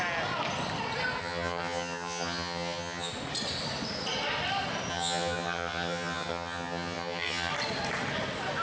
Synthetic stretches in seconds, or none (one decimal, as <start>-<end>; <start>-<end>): 1.2-3.1; 4.9-7.5